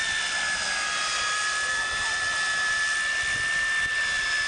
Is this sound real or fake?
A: real